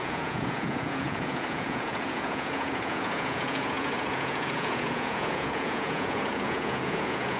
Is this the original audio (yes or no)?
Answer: no